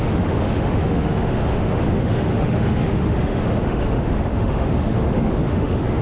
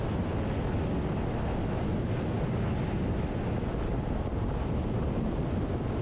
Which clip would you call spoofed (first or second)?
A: first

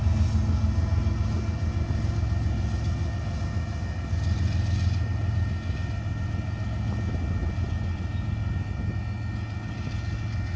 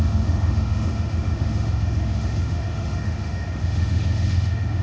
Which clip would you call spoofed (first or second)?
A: second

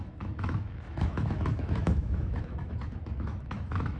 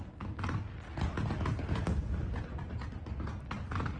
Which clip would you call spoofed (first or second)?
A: first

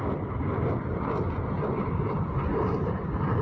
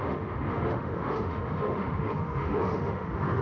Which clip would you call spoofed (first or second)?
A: second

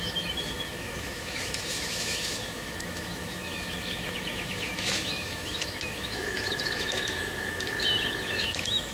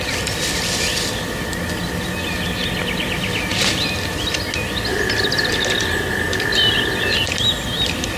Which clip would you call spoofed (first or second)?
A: first